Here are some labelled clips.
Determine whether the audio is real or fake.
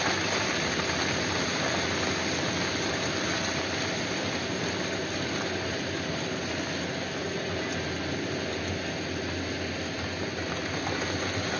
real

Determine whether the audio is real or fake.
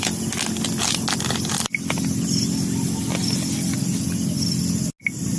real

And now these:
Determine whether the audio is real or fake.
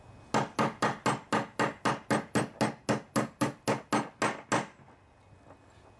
real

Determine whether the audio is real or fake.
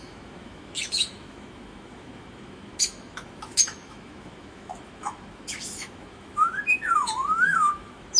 fake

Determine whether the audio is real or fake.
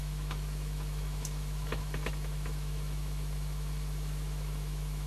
fake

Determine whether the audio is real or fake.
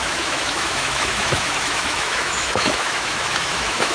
fake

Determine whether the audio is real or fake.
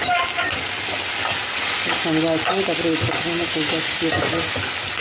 real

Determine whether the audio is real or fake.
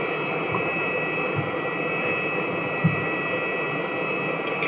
real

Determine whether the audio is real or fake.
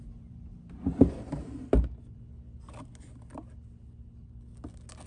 real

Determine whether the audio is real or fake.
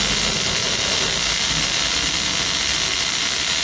real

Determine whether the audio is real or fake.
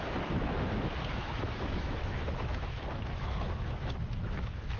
fake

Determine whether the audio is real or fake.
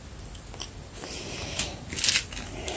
real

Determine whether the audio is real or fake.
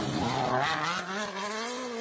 real